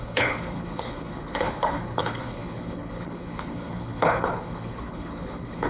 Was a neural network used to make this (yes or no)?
yes